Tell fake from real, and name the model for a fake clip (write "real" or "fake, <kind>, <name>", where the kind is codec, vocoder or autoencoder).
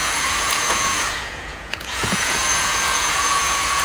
fake, vocoder, Vocos